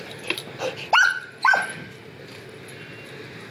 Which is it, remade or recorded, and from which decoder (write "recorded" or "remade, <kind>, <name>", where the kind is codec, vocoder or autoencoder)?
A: recorded